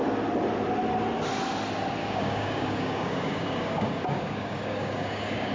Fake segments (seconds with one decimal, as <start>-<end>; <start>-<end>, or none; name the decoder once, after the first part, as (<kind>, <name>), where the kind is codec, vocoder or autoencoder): 2.0-5.5 (codec, DAC)